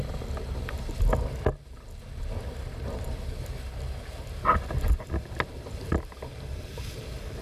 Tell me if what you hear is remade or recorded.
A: recorded